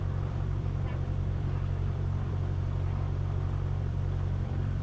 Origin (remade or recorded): remade